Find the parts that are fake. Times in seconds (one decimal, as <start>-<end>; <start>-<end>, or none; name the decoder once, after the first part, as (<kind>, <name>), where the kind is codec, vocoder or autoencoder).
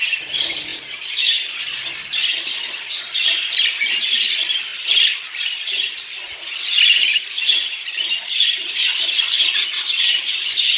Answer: none